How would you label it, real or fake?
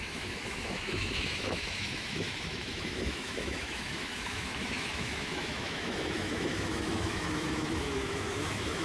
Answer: fake